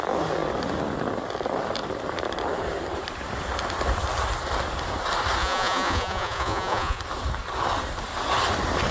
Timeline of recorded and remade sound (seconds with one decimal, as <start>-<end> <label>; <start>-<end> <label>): 0.0-5.4 recorded; 5.4-7.0 remade; 7.0-8.9 recorded

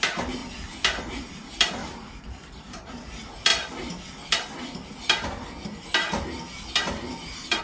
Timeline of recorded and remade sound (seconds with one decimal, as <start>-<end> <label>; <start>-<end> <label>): 0.0-1.8 recorded; 1.8-2.9 remade; 2.9-7.6 recorded

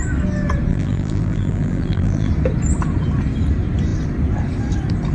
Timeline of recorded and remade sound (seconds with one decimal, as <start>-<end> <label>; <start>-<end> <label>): 0.0-0.7 recorded; 0.7-2.3 remade; 2.3-5.1 recorded

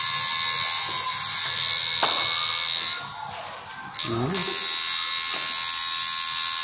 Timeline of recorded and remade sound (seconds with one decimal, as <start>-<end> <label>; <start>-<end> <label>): 0.0-6.6 recorded

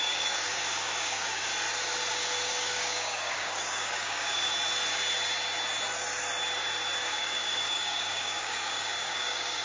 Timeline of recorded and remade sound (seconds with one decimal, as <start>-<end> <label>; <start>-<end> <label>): 0.0-1.5 remade; 1.5-2.1 recorded; 2.1-4.5 remade; 4.5-7.0 recorded; 7.0-9.6 remade

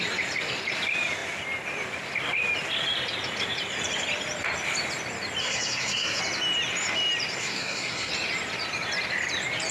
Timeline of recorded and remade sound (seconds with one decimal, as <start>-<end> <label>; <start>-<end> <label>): 0.0-5.4 recorded; 5.4-6.2 remade; 6.2-7.4 recorded; 7.4-8.1 remade; 8.1-9.7 recorded